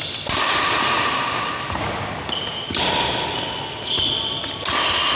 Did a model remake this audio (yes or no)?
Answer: no